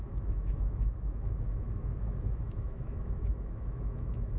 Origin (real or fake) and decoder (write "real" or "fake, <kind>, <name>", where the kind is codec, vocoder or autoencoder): fake, autoencoder, DAC-VAE